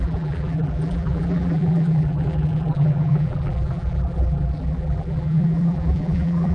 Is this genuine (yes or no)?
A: no